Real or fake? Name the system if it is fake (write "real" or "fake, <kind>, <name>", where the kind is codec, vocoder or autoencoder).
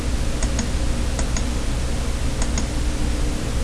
real